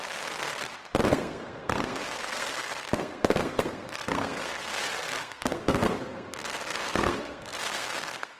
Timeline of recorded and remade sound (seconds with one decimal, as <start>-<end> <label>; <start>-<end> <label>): 0.0-0.6 remade; 0.6-1.1 recorded; 1.1-8.4 remade